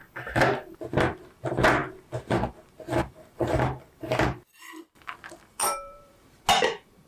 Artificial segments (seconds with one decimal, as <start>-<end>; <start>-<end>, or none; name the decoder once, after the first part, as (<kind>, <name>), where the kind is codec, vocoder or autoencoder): 5.6-6.4 (vocoder, BigVGAN v2)